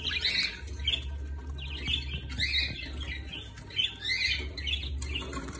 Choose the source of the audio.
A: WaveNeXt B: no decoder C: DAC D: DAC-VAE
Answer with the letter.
B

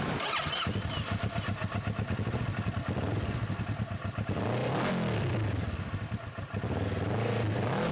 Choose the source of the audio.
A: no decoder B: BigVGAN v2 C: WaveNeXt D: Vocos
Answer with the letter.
A